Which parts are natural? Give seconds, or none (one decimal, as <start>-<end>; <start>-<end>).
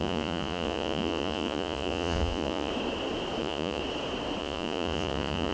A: 2.7-3.4; 3.8-4.4